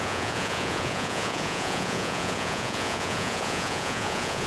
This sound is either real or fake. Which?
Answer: fake